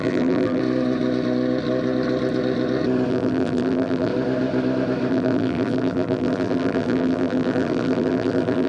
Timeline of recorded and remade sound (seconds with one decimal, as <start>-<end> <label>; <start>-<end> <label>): 0.0-0.6 remade; 0.6-3.1 recorded; 3.1-4.1 remade; 4.1-5.1 recorded; 5.1-8.7 remade